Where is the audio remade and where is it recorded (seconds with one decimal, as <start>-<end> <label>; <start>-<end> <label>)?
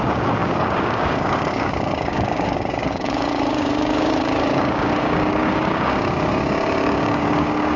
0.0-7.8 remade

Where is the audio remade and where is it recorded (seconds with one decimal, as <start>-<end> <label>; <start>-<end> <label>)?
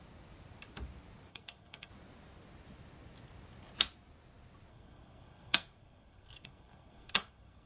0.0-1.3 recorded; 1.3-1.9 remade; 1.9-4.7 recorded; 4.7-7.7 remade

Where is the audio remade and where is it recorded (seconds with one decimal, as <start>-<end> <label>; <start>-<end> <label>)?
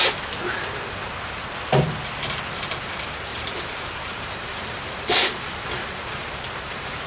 0.0-3.3 recorded; 3.3-7.1 remade